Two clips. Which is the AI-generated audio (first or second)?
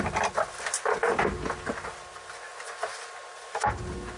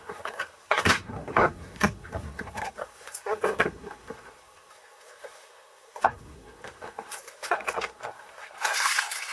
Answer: second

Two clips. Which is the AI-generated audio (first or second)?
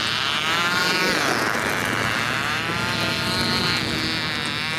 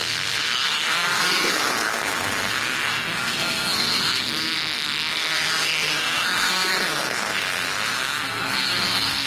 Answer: second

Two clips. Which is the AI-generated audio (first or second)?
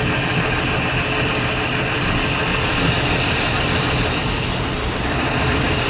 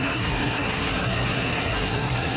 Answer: second